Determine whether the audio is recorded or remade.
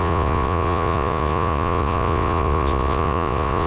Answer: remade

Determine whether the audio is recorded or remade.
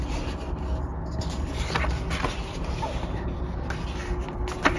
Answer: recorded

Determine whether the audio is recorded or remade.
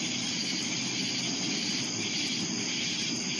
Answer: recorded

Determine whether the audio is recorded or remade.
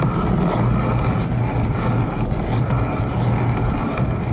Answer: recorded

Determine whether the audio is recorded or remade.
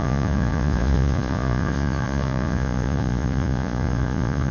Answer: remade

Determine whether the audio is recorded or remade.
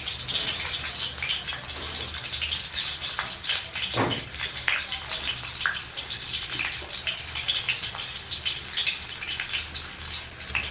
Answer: recorded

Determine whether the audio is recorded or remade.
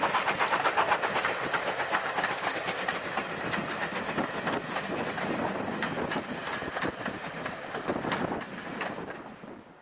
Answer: recorded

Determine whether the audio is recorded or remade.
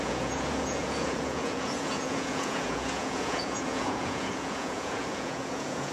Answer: remade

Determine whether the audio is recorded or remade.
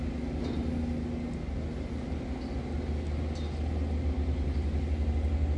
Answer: recorded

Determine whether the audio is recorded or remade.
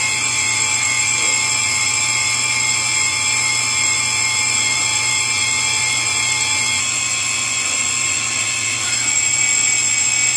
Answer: remade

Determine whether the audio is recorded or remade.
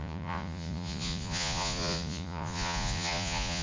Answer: remade